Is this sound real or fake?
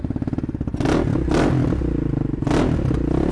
real